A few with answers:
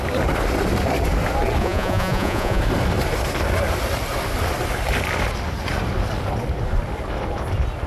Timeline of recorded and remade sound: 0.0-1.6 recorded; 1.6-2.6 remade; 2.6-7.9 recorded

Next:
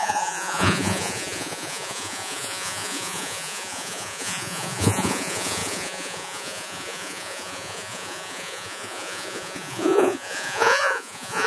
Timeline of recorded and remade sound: 0.0-11.5 remade

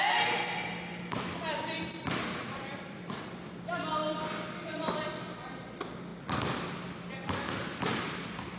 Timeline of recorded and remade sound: 0.0-2.3 recorded; 2.3-3.3 remade; 3.3-8.6 recorded